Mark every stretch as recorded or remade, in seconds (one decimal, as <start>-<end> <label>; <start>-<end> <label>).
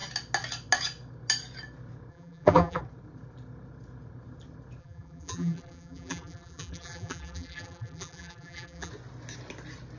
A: 0.0-2.1 recorded; 2.1-2.8 remade; 2.8-4.8 recorded; 4.8-8.9 remade; 8.9-10.0 recorded